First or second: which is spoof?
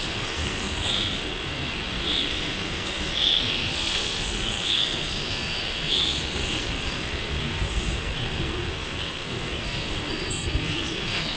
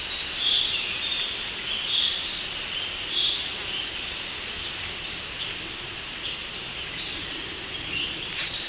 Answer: first